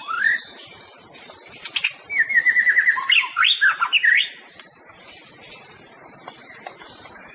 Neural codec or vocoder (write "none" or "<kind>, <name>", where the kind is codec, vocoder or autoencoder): none